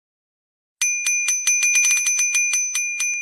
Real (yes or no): yes